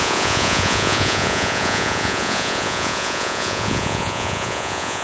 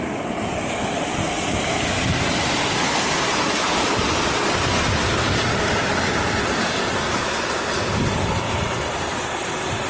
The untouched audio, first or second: second